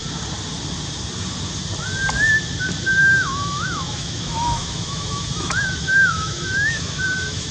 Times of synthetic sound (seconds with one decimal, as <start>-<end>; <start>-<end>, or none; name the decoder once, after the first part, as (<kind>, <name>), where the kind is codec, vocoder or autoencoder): 3.0-7.5 (autoencoder, DAC-VAE)